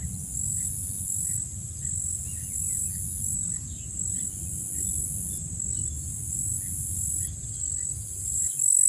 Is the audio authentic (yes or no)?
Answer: yes